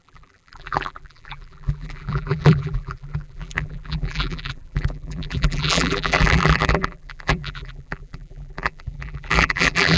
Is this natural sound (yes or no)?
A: no